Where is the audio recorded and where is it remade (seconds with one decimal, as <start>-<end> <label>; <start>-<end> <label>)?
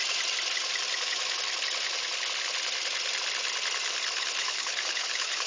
0.0-4.4 recorded; 4.4-5.5 remade